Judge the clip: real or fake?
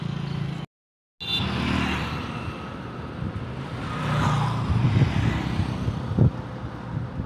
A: real